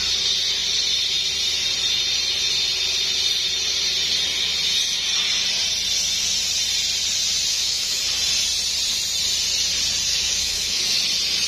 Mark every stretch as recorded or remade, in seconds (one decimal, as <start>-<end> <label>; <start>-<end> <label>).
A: 0.0-7.5 recorded; 7.5-8.0 remade; 8.0-10.1 recorded; 10.1-11.0 remade; 11.0-11.5 recorded